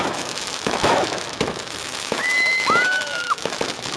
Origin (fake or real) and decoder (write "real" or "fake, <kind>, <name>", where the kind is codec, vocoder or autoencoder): fake, autoencoder, DAC-VAE